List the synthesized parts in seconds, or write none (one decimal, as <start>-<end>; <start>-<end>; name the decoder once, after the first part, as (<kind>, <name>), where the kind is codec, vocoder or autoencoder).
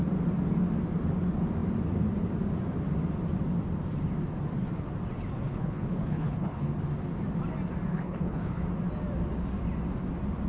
5.5-6.7 (codec, HILCodec); 7.9-8.6